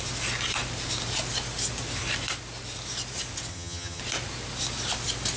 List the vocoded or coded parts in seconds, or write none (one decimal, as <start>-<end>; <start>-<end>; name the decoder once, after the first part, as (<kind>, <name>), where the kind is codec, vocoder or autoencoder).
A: 3.5-4.0 (vocoder, HiFi-GAN)